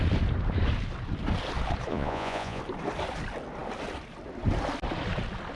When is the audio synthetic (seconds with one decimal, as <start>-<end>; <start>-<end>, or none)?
1.9-2.6